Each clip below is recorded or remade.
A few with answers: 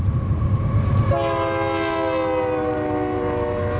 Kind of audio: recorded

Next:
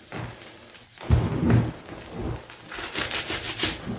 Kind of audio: recorded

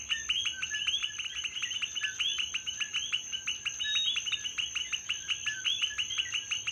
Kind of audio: recorded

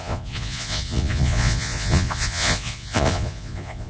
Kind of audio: remade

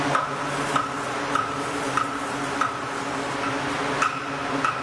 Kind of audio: recorded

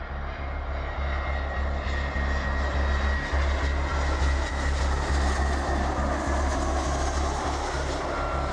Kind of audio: recorded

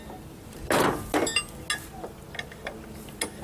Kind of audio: recorded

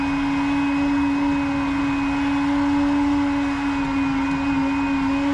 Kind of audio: recorded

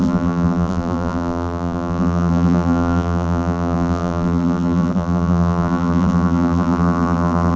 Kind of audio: remade